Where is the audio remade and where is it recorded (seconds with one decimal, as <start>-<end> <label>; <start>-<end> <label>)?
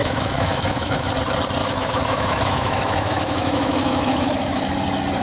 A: 0.0-1.1 remade; 1.1-1.6 recorded; 1.6-4.7 remade; 4.7-5.2 recorded